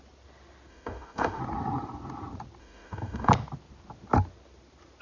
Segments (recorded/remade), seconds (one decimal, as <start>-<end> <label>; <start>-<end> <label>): 0.0-0.7 recorded; 0.7-1.4 remade; 1.4-2.6 recorded; 2.6-3.3 remade; 3.3-5.0 recorded